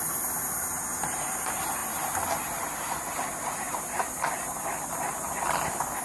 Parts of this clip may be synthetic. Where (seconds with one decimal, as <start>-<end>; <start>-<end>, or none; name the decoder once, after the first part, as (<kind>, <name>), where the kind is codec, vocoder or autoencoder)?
none